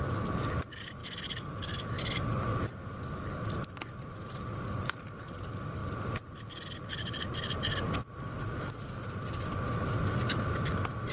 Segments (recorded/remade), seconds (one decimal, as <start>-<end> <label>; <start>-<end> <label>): 0.0-11.1 recorded